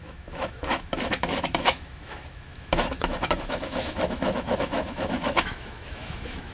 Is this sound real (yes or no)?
no